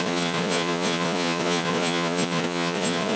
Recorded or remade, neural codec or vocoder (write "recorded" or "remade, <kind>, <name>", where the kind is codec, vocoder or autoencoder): remade, vocoder, Vocos